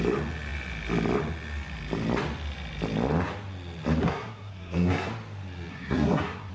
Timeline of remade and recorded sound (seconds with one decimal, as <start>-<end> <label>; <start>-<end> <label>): 0.0-4.0 recorded; 4.0-5.1 remade; 5.1-5.7 recorded; 5.7-6.5 remade